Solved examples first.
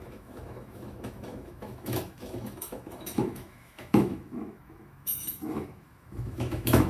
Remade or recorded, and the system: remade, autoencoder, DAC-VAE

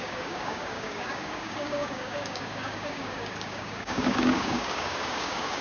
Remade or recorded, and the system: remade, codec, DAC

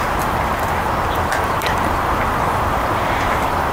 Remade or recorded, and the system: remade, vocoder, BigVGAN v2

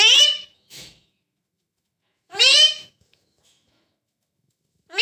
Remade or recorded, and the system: remade, autoencoder, DAC-VAE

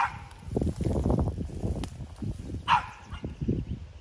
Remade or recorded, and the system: recorded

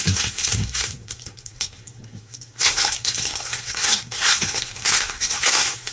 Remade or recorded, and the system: remade, codec, SNAC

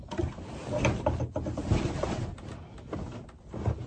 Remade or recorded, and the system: recorded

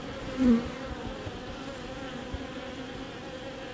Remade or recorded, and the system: recorded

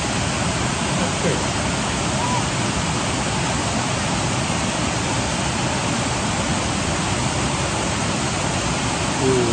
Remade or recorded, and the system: recorded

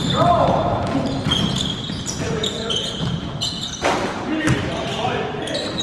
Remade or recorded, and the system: remade, vocoder, BigVGAN v2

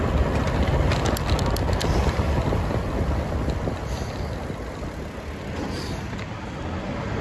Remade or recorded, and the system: recorded